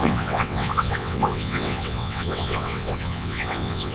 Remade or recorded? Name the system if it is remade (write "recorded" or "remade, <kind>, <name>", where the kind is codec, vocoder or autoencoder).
remade, vocoder, WaveNeXt